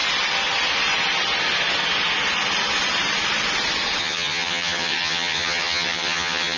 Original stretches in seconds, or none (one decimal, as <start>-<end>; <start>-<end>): 0.0-4.0